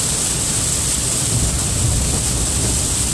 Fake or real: real